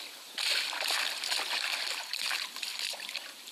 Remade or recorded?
recorded